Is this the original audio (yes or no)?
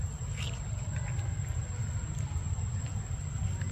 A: yes